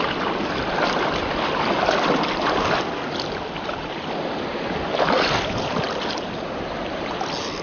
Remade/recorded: recorded